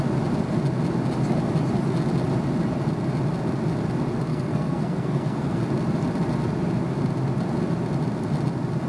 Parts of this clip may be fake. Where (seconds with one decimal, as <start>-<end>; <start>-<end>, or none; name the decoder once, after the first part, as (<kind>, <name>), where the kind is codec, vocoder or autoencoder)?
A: 4.3-5.6 (codec, SNAC)